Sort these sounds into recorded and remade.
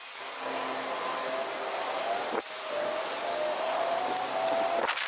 recorded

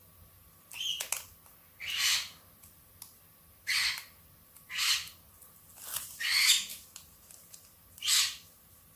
recorded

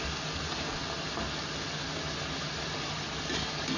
recorded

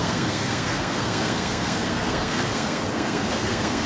remade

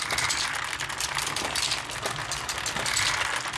recorded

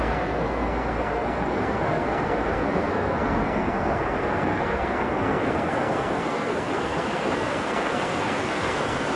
remade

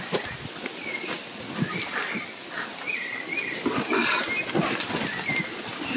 recorded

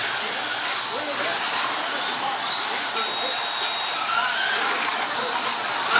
recorded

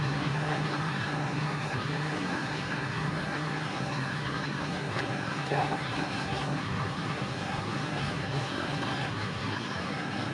remade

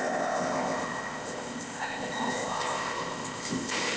remade